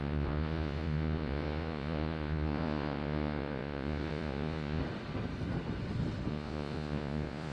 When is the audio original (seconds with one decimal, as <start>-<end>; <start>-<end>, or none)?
4.8-6.3